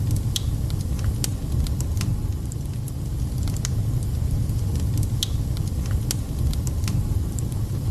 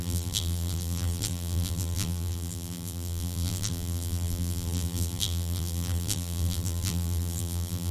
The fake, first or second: second